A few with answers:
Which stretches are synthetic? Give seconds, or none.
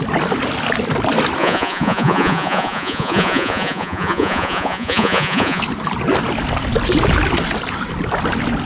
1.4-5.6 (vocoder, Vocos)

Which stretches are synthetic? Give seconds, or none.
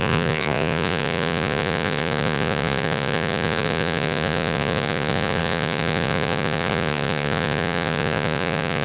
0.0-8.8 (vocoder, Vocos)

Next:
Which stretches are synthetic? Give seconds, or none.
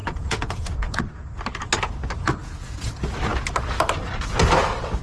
0.0-1.0 (vocoder, Vocos); 2.2-2.9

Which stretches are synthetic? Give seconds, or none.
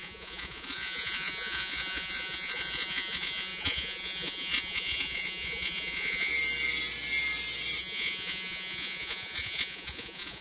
0.0-6.3 (vocoder, Vocos); 7.8-10.4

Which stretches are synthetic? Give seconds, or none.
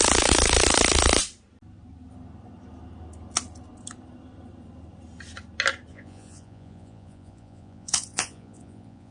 5.9-9.1 (vocoder, Vocos)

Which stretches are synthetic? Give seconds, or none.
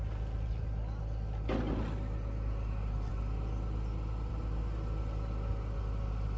none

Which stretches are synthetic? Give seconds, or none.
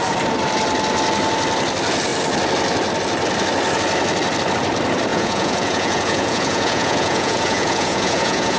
5.1-8.6 (vocoder, Vocos)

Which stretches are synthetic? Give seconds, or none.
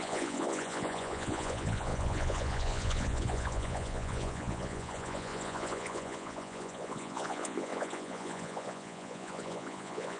0.0-10.2 (vocoder, Vocos)